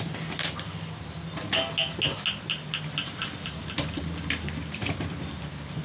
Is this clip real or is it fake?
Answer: real